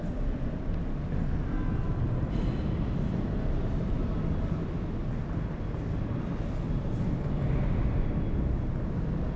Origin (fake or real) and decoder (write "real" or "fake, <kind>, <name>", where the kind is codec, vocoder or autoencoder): real